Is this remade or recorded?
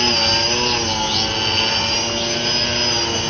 recorded